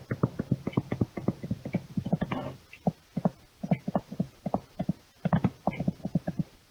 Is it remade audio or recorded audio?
recorded